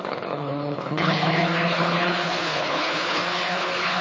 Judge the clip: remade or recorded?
remade